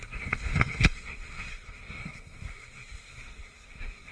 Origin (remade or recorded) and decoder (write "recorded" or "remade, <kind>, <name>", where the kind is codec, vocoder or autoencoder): remade, codec, SNAC